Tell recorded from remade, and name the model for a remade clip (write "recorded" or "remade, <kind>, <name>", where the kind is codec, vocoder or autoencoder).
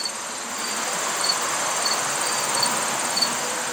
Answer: recorded